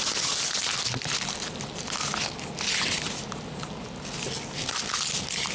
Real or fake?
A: real